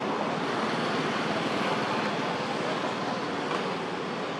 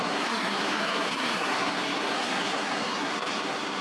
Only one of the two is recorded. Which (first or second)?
first